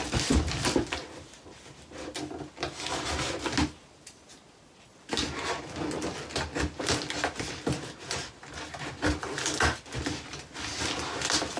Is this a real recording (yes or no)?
yes